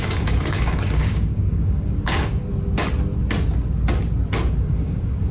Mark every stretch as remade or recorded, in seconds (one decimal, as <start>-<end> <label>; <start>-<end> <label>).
0.0-2.4 remade; 2.4-4.6 recorded; 4.6-5.3 remade